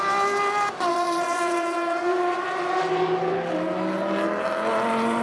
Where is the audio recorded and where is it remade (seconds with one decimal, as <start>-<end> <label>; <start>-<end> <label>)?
0.0-0.9 recorded; 0.9-2.8 remade; 2.8-5.2 recorded